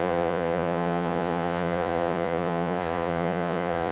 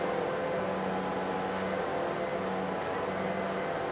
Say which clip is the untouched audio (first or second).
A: second